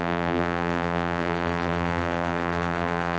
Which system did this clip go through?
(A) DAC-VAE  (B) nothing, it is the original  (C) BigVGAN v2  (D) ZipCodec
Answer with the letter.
C